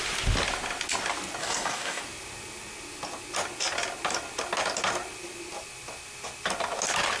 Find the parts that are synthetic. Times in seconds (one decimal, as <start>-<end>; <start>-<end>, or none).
1.4-2.0